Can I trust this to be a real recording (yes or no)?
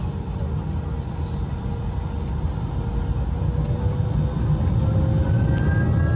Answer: yes